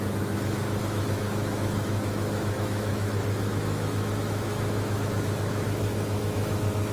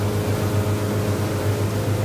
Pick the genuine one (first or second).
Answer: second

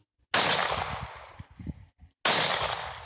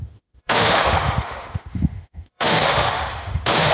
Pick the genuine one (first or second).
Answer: first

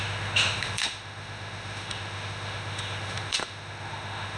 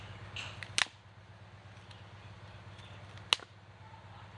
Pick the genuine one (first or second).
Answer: second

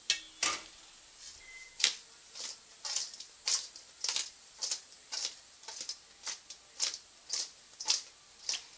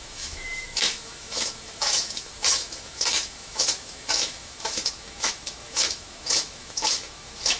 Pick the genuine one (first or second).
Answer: first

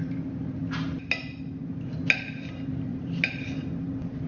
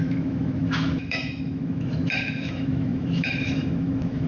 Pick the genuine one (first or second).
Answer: first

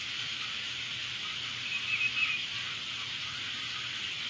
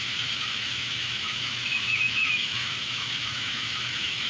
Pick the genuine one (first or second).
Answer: first